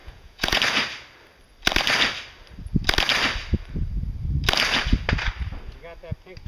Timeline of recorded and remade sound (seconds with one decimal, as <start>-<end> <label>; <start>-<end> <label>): 0.0-0.6 remade; 0.6-6.5 recorded